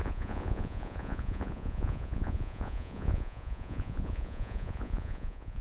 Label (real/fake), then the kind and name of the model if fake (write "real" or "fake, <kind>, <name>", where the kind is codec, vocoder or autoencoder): fake, vocoder, Vocos